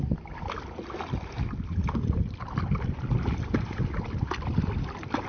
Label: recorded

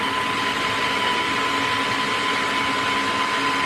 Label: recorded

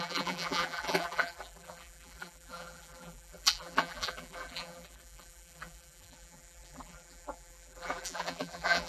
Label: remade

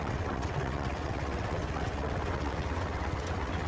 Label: remade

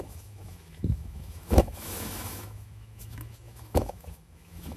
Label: remade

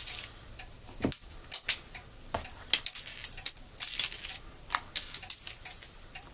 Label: recorded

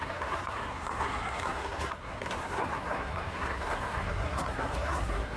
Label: remade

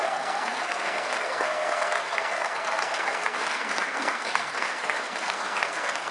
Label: remade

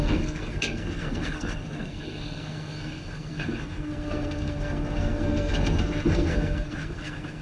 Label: remade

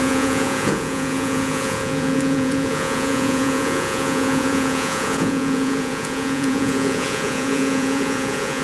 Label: remade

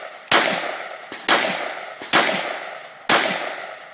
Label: recorded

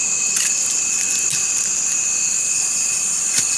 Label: recorded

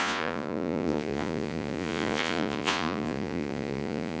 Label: remade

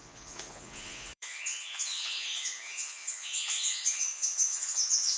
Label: remade